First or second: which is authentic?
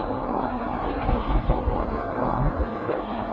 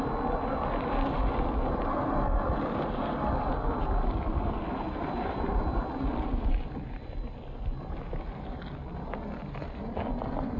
second